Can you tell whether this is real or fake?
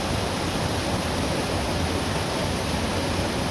real